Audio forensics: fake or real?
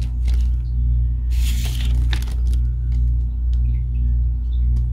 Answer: real